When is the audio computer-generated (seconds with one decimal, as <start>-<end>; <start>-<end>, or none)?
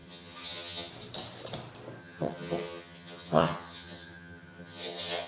0.0-0.9; 2.0-5.3